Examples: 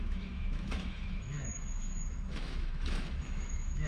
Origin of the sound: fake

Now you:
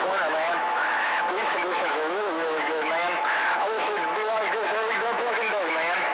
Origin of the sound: fake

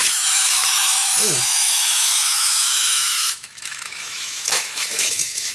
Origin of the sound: fake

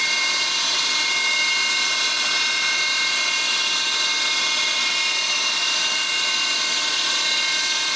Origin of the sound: real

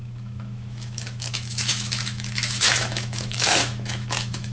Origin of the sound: fake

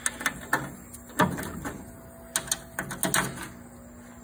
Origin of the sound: real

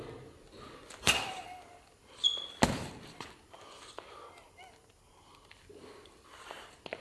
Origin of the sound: real